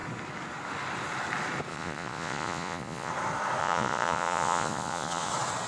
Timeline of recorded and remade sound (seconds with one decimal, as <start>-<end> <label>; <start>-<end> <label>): 0.0-1.7 recorded; 1.7-3.1 remade; 3.1-3.6 recorded; 3.6-5.3 remade; 5.3-5.7 recorded